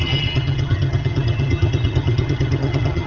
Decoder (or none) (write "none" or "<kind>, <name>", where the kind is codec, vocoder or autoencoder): vocoder, HiFi-GAN